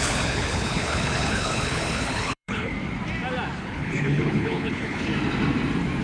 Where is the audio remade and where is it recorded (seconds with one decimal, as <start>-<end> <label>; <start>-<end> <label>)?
0.0-2.7 remade; 2.7-3.6 recorded; 3.6-5.1 remade; 5.1-6.0 recorded